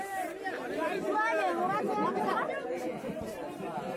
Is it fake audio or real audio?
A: fake